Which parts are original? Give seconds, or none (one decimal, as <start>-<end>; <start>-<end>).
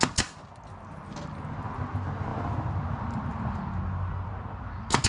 0.0-5.1